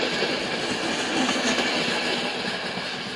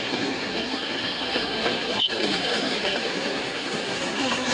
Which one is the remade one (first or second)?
second